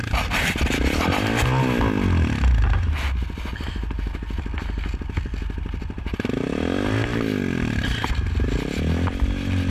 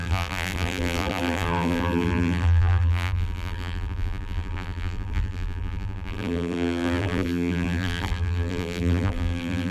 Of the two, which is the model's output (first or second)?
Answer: second